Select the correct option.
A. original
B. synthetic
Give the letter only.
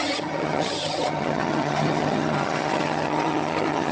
B